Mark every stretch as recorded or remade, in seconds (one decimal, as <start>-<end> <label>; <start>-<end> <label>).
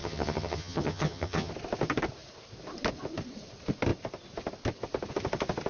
0.0-1.5 remade; 1.5-5.7 recorded